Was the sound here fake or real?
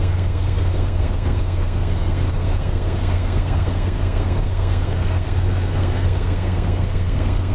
fake